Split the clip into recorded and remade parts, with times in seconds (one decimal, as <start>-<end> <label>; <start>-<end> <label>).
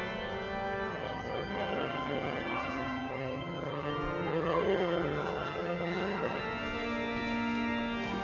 0.0-0.9 recorded; 0.9-3.9 remade; 3.9-4.3 recorded; 4.3-6.4 remade; 6.4-8.2 recorded